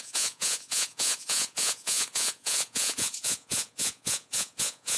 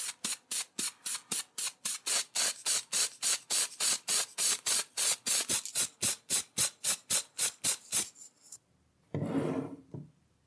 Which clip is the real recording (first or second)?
second